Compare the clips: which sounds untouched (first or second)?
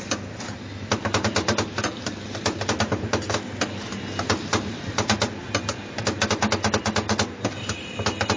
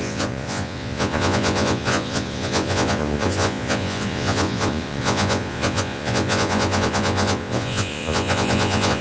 first